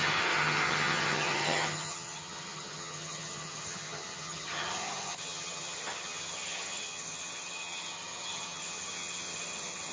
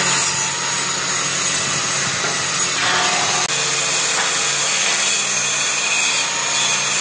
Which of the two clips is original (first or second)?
second